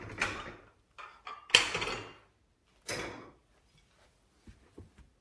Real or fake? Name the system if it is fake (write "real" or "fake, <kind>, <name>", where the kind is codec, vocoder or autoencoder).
real